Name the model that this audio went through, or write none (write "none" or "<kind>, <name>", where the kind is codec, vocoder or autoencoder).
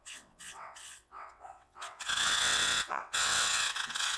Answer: vocoder, WaveNeXt